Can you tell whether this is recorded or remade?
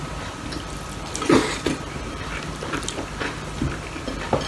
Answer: remade